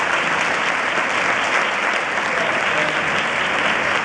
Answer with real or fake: real